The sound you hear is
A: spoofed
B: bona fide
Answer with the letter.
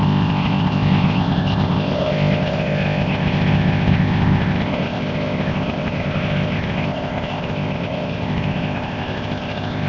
A